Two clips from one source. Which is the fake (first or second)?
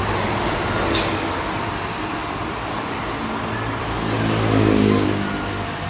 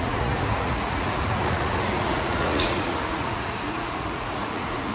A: second